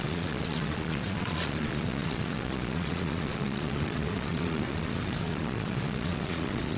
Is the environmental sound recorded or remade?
remade